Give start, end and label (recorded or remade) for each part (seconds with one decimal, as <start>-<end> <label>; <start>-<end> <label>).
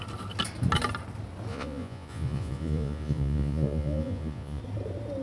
0.0-1.5 recorded; 1.5-4.6 remade; 4.6-5.2 recorded